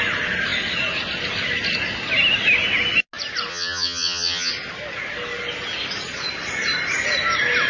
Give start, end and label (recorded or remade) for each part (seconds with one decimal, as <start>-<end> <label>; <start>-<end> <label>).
0.0-3.5 recorded; 3.5-4.5 remade; 4.5-7.7 recorded